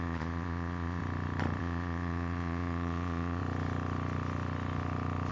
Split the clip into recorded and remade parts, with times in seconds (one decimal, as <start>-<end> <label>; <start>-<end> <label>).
0.0-1.0 remade; 1.0-1.6 recorded; 1.6-3.4 remade; 3.4-5.3 recorded